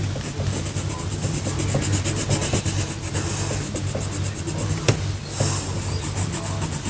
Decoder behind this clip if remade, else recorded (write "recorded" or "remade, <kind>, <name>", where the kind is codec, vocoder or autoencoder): recorded